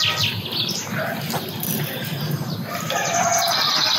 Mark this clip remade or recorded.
recorded